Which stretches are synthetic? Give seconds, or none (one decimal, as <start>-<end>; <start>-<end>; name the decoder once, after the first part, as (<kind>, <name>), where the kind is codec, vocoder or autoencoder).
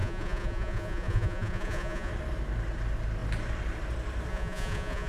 0.0-2.1 (vocoder, Vocos); 4.3-5.1